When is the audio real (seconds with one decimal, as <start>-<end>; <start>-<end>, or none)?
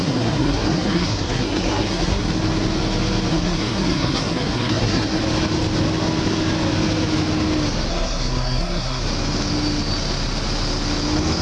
2.3-3.3; 5.2-7.9; 9.0-11.4